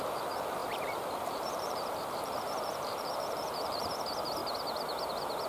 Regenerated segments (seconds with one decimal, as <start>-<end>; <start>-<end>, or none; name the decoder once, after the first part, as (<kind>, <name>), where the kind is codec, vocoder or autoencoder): 0.6-3.9 (vocoder, BigVGAN v2)